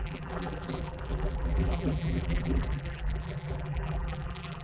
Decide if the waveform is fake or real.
fake